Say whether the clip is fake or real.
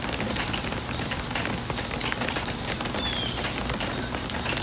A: real